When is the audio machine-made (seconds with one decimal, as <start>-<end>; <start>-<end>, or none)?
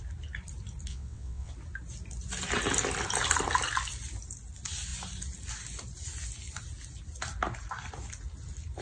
0.9-1.5